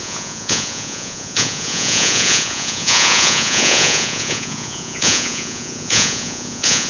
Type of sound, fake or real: fake